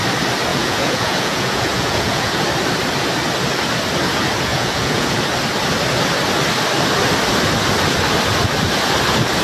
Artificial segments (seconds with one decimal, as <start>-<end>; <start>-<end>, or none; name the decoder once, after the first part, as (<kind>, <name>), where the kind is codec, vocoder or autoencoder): 0.5-2.4 (vocoder, Vocos); 4.5-5.2